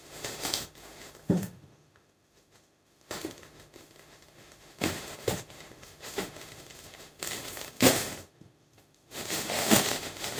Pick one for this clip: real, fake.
fake